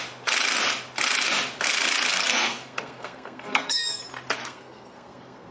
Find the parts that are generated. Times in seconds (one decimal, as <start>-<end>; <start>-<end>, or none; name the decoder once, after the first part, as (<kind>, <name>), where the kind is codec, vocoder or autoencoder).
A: 2.1-4.0 (codec, SNAC); 4.4-5.5